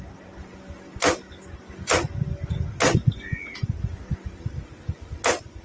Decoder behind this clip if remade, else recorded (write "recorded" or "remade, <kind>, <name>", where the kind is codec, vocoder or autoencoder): recorded